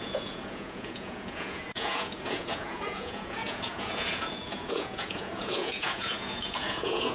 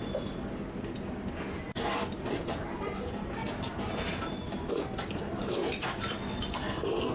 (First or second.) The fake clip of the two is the first